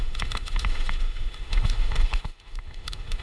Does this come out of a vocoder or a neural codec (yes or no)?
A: yes